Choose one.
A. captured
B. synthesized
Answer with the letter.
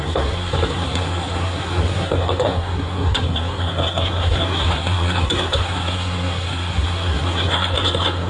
B